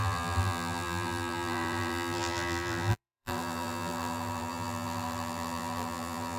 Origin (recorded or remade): remade